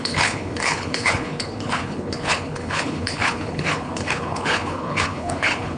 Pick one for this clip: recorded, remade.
remade